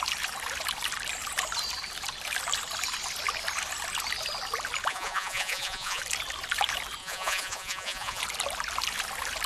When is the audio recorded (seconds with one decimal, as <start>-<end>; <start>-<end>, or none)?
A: 0.0-4.9; 6.0-7.0; 8.2-9.5